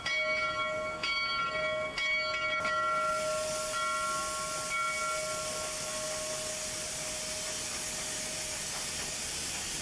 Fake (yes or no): no